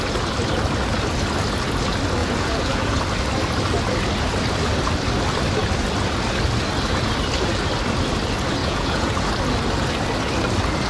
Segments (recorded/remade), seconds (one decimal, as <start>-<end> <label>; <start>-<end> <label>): 0.0-2.2 recorded; 2.2-3.0 remade; 3.0-8.6 recorded; 8.6-9.1 remade; 9.1-10.9 recorded